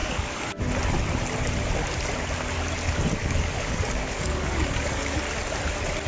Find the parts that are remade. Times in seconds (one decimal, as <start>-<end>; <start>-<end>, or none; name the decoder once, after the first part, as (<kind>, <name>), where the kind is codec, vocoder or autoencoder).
0.0-0.6 (codec, DAC); 3.2-5.2